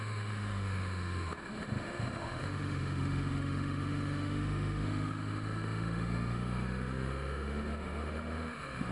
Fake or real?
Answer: fake